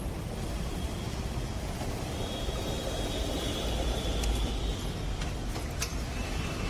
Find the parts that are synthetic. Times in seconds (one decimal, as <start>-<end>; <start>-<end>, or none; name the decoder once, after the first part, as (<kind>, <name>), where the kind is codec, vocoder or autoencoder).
none